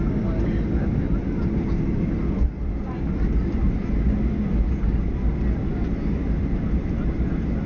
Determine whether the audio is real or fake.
real